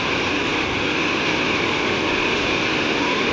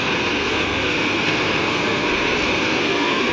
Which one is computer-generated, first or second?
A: second